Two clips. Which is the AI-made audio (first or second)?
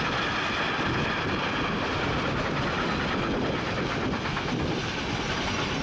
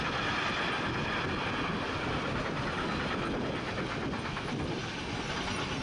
first